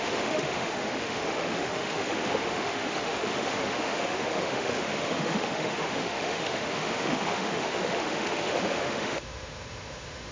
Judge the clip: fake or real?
fake